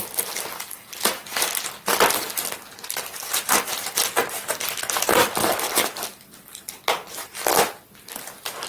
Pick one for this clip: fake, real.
real